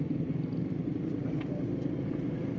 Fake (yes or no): no